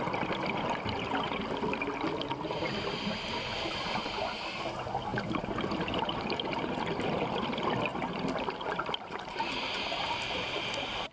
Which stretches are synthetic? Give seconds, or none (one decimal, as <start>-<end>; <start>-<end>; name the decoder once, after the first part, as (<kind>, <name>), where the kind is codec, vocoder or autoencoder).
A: 5.1-6.8 (vocoder, BigVGAN v2)